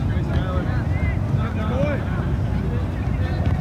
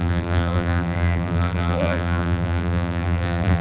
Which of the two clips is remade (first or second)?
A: second